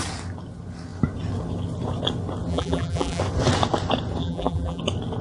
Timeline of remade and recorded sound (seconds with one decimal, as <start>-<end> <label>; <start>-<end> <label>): 0.0-2.5 recorded; 2.5-3.2 remade; 3.2-4.2 recorded; 4.2-4.8 remade; 4.8-5.2 recorded